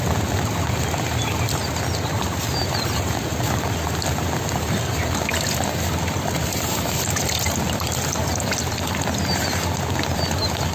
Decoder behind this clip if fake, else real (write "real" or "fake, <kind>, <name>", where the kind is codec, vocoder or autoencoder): real